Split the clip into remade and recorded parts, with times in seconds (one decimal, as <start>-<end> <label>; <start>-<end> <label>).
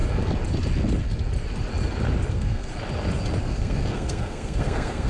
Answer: 0.0-2.3 recorded; 2.3-2.7 remade; 2.7-3.4 recorded; 3.4-5.1 remade